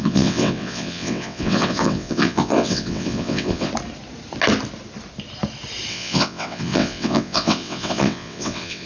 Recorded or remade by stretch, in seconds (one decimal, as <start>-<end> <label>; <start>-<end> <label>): 0.0-3.7 remade; 3.7-5.9 recorded; 5.9-8.9 remade